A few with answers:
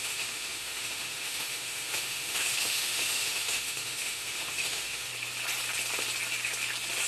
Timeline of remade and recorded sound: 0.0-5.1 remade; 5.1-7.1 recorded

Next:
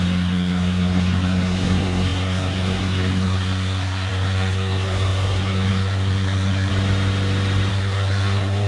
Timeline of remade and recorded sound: 0.0-6.7 remade; 6.7-7.7 recorded; 7.7-8.7 remade

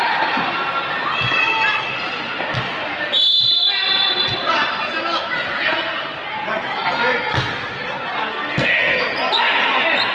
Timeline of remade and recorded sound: 0.0-8.3 recorded; 8.3-9.0 remade; 9.0-10.1 recorded

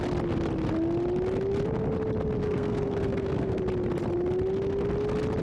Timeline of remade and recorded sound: 0.0-2.4 recorded; 2.4-3.6 remade; 3.6-5.4 recorded

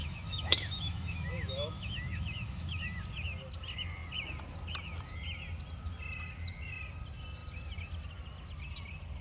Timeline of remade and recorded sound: 0.0-3.0 remade; 3.0-9.2 recorded

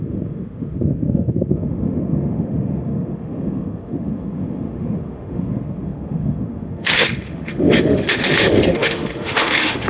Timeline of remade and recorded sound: 0.0-9.9 remade